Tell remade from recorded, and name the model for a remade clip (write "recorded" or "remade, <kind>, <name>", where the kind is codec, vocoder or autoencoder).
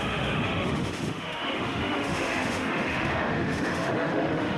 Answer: remade, autoencoder, DAC-VAE